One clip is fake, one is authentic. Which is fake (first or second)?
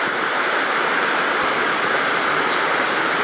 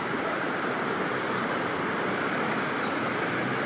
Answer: first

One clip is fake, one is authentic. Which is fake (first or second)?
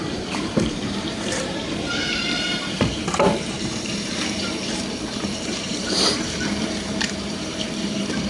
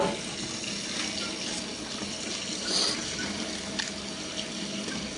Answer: first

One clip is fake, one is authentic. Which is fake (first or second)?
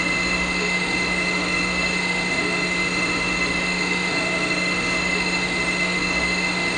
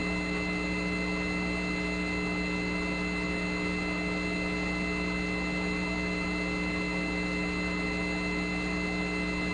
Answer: first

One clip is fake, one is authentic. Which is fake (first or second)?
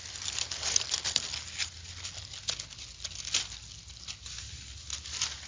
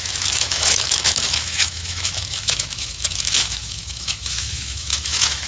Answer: second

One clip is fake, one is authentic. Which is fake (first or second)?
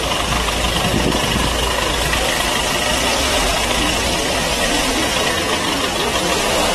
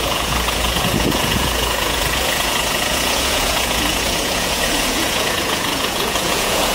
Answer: second